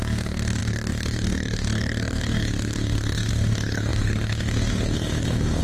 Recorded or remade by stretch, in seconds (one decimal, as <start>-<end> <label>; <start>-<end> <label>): 0.0-5.6 remade